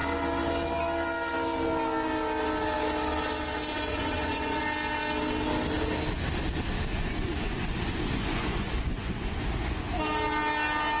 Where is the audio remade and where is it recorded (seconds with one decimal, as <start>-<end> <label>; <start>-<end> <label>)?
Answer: 0.0-3.7 recorded; 3.7-4.6 remade; 4.6-6.9 recorded; 6.9-10.0 remade; 10.0-11.0 recorded